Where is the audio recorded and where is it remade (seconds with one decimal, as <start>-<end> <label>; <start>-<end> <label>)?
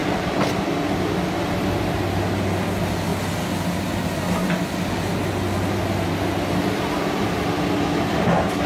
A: 0.0-8.7 recorded